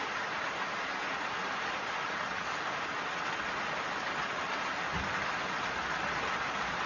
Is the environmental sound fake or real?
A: real